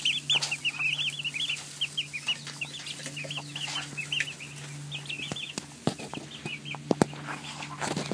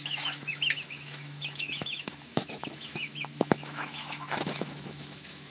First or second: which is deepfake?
second